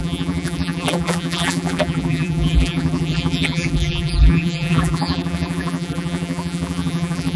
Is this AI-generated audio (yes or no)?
yes